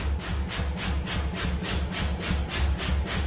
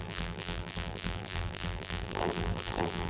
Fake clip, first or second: second